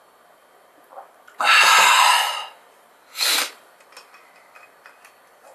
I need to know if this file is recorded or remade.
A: recorded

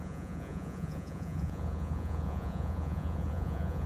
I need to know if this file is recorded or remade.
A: remade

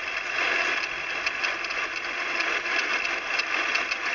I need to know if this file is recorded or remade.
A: recorded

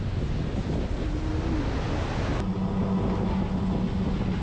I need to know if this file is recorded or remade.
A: recorded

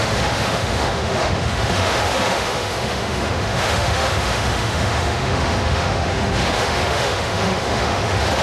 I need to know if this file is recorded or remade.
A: remade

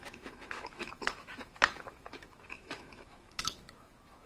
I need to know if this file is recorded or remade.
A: remade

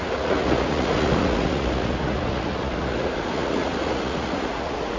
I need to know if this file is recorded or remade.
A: remade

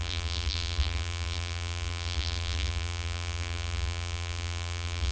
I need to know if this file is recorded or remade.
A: remade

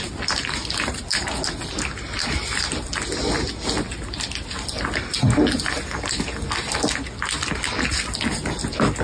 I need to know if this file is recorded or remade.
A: recorded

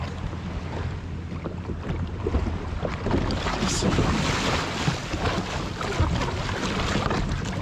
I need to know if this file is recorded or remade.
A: recorded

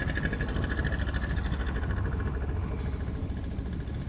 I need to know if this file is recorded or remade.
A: recorded